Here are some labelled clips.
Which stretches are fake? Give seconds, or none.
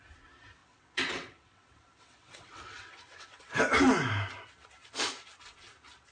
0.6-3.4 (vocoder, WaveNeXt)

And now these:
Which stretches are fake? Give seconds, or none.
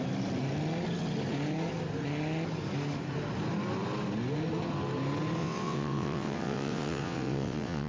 5.4-7.9 (vocoder, WaveNeXt)